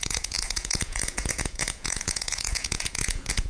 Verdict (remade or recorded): remade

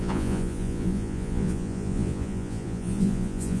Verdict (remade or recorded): remade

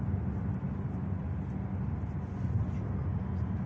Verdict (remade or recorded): recorded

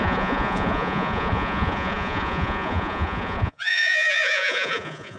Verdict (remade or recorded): remade